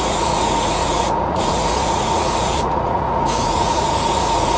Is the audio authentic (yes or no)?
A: no